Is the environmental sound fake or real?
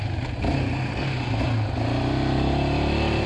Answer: real